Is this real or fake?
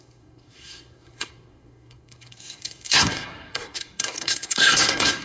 fake